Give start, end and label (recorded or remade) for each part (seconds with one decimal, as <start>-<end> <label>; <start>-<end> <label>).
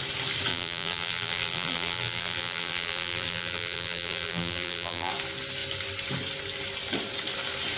0.0-0.5 recorded; 0.5-5.1 remade; 5.1-7.8 recorded